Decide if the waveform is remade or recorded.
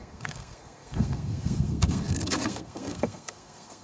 remade